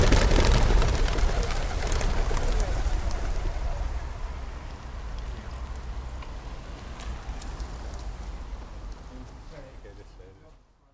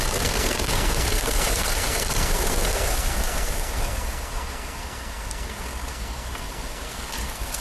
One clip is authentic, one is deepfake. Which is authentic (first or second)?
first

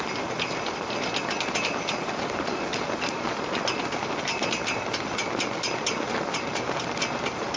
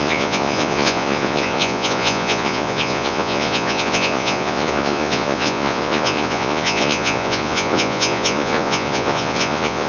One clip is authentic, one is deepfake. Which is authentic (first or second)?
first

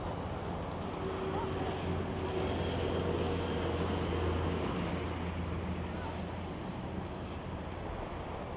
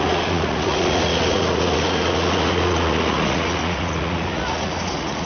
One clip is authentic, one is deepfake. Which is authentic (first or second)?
first